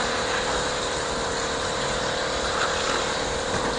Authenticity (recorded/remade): recorded